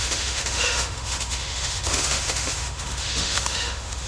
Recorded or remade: remade